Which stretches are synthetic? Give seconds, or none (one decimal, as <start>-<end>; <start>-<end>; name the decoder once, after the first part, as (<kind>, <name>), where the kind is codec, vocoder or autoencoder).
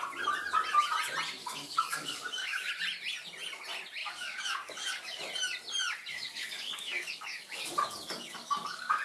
1.4-2.7 (codec, DAC); 4.0-5.2; 6.1-9.0